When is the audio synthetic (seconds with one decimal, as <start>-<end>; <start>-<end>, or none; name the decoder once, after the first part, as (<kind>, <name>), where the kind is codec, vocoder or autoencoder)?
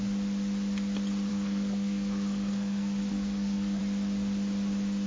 1.3-3.8 (codec, SNAC)